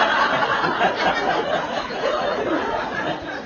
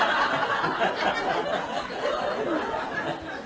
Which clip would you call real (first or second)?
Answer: second